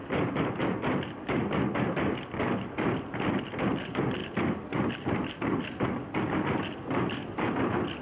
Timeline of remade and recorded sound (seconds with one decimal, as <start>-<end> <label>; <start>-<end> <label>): 0.0-8.0 recorded